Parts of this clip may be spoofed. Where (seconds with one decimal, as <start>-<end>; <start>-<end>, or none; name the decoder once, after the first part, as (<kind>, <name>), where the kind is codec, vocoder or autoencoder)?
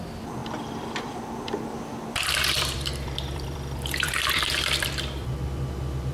0.0-0.4 (vocoder, BigVGAN v2); 2.0-6.1